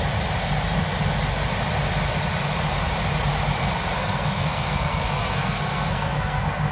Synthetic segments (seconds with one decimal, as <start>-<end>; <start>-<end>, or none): 3.9-6.7